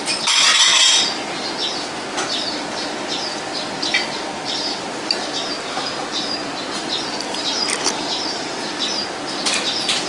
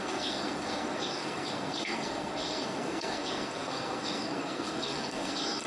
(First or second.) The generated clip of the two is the second